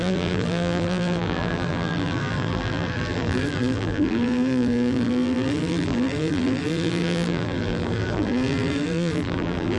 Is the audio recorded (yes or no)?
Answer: no